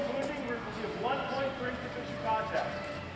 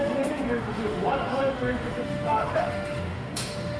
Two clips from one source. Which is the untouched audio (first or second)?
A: first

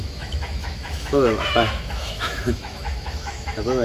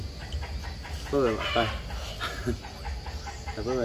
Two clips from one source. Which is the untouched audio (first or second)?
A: second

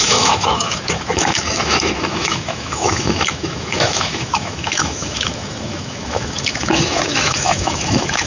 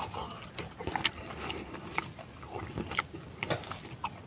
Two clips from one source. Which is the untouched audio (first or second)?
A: second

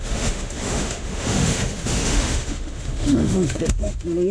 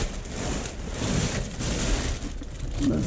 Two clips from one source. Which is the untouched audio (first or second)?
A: second